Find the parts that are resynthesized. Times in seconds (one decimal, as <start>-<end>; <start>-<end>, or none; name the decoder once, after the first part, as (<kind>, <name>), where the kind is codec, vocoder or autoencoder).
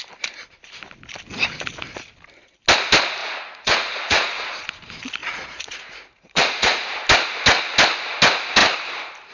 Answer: 3.2-4.5 (vocoder, Vocos); 5.2-6.9